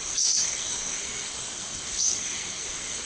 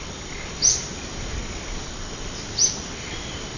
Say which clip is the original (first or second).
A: second